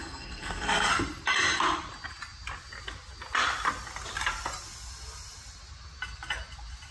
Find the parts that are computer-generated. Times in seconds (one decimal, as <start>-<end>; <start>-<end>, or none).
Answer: 0.0-0.9